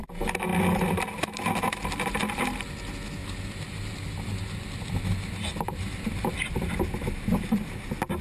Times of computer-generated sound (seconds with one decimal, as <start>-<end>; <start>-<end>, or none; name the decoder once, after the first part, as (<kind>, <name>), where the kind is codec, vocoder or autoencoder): 3.2-8.2 (vocoder, BigVGAN v2)